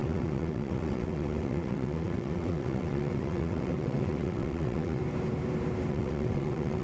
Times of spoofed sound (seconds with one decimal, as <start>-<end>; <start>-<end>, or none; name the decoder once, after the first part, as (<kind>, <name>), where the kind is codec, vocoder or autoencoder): 0.0-5.0 (vocoder, WaveNeXt); 5.9-6.8